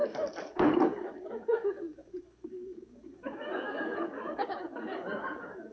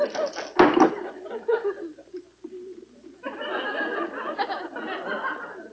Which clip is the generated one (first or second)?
first